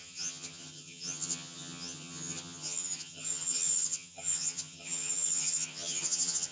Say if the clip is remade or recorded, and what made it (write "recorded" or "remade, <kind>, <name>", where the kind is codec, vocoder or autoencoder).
remade, vocoder, HiFi-GAN